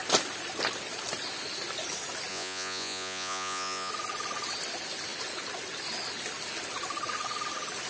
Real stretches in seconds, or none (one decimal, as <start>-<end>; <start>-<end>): 0.0-2.3; 3.9-7.9